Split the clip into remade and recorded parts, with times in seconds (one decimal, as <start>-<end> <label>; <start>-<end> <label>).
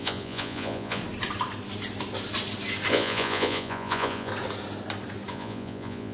0.0-1.0 remade; 1.0-2.9 recorded; 2.9-4.3 remade; 4.3-5.3 recorded; 5.3-6.1 remade